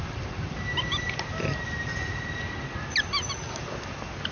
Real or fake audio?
real